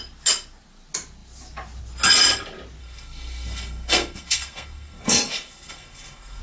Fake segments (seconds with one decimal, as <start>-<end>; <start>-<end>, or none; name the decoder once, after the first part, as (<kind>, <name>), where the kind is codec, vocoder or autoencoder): 2.8-6.4 (codec, SNAC)